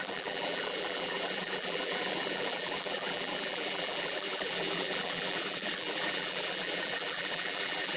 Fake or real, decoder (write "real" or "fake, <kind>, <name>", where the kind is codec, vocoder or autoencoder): fake, vocoder, BigVGAN v2